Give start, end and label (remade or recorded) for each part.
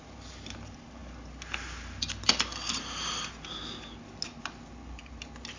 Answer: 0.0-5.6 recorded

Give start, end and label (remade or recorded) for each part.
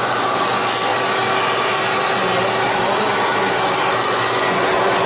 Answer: 0.0-0.9 remade; 0.9-4.0 recorded; 4.0-5.1 remade